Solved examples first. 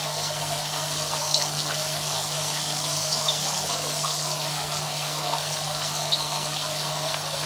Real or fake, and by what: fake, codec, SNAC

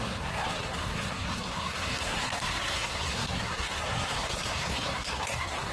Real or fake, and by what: fake, codec, SNAC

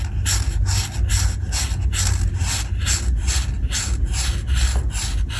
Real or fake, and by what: real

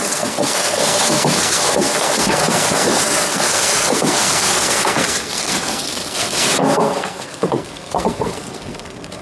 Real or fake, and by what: fake, codec, SNAC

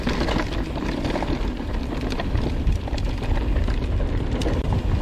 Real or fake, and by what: real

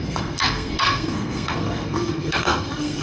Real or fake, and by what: fake, codec, SNAC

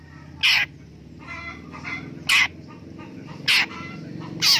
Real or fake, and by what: real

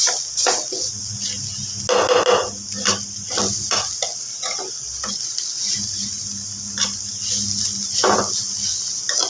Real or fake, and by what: real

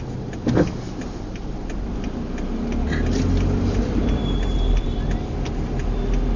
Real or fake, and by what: real